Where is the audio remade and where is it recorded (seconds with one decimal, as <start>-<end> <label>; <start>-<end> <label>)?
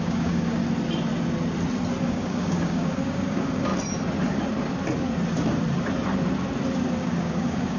0.0-0.6 remade; 0.6-2.0 recorded; 2.0-3.7 remade; 3.7-7.0 recorded; 7.0-7.8 remade